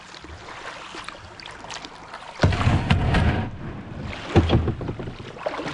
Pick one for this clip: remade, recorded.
recorded